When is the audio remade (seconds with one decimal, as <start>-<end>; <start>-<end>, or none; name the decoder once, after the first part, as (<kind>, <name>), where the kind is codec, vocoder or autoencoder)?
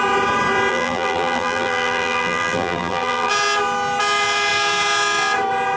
0.7-3.3 (vocoder, BigVGAN v2)